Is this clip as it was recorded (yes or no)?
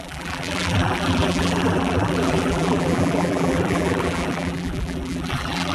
no